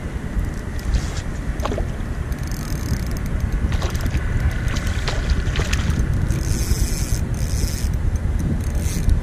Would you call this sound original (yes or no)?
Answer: yes